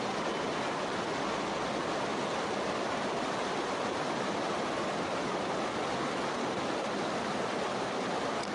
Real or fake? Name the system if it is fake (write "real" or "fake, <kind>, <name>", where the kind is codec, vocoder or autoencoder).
real